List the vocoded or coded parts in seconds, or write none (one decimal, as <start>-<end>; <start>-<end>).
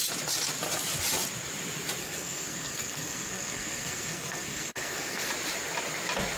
2.0-5.3